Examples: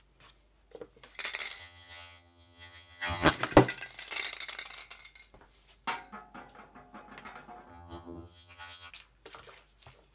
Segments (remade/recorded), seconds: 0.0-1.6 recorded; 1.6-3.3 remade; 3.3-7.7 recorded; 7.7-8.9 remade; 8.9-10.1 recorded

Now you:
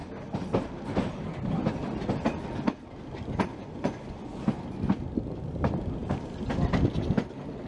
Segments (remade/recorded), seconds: 0.0-3.5 recorded; 3.5-4.5 remade; 4.5-7.7 recorded

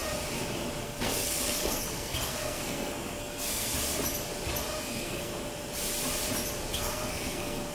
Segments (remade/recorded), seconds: 0.0-0.8 recorded; 0.8-3.7 remade; 3.7-4.8 recorded; 4.8-5.3 remade; 5.3-6.7 recorded; 6.7-7.7 remade

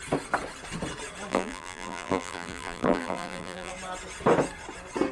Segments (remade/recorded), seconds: 0.0-1.3 recorded; 1.3-3.7 remade; 3.7-5.1 recorded

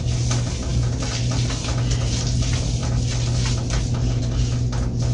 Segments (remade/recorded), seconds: 0.0-5.1 recorded

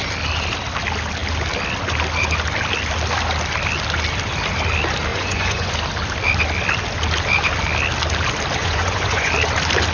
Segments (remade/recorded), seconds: 0.0-5.1 recorded; 5.1-5.7 remade; 5.7-8.6 recorded; 8.6-9.3 remade; 9.3-9.9 recorded

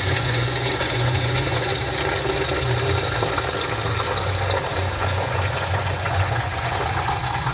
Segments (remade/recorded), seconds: 0.0-1.7 remade; 1.7-4.7 recorded; 4.7-7.5 remade